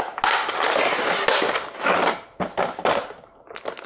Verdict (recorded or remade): recorded